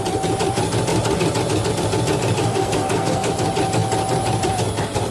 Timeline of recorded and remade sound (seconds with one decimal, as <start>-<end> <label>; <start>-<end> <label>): 0.0-2.5 recorded; 2.5-3.3 remade; 3.3-5.1 recorded